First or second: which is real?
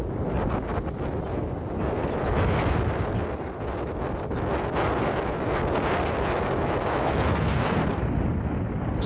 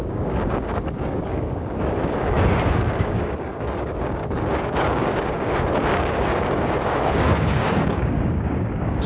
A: first